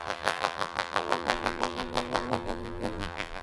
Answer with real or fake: fake